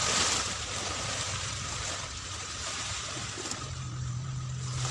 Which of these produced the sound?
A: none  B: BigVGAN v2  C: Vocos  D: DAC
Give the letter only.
B